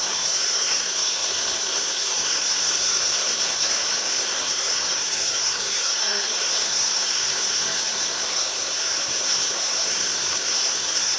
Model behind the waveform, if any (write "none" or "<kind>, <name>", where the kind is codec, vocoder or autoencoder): codec, SNAC